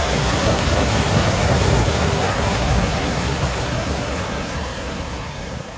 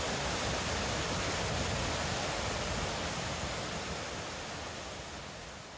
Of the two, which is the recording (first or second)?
second